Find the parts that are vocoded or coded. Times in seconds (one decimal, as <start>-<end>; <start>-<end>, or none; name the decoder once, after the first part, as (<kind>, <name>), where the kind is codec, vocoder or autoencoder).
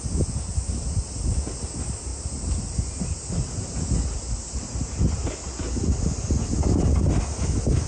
none